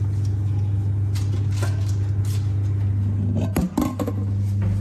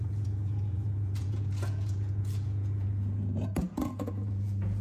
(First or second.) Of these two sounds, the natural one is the first